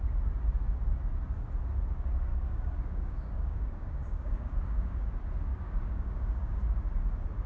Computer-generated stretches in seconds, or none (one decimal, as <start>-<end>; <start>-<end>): 2.3-5.1; 5.5-6.6